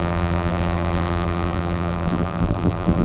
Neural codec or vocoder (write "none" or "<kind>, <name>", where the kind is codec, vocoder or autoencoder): vocoder, BigVGAN v2